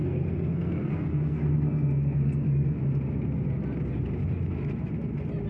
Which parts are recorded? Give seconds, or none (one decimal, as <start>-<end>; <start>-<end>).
2.8-5.5